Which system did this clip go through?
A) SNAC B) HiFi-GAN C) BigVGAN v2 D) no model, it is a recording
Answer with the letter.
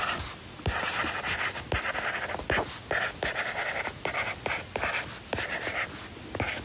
D